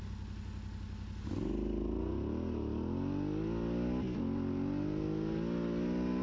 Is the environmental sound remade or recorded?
recorded